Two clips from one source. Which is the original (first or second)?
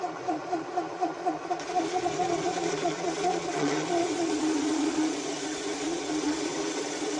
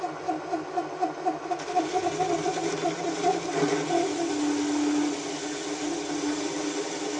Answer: second